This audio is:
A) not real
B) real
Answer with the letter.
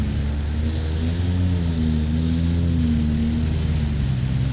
B